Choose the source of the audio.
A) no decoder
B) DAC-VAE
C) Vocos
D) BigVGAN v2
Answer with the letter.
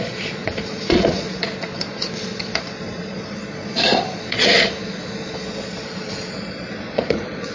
C